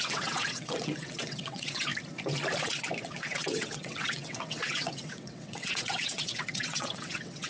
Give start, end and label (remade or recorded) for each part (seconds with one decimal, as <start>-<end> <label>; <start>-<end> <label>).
0.0-1.9 remade; 1.9-2.6 recorded; 2.6-7.5 remade

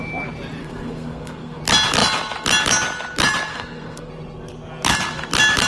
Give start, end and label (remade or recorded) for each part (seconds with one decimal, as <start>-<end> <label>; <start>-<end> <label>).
0.0-0.6 recorded; 0.6-1.6 remade; 1.6-3.5 recorded; 3.5-4.1 remade; 4.1-5.7 recorded

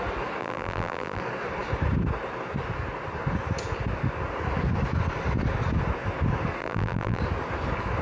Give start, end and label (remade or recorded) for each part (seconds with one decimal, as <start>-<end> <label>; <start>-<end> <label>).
0.0-0.4 recorded; 0.4-1.2 remade; 1.2-6.6 recorded; 6.6-7.2 remade; 7.2-8.0 recorded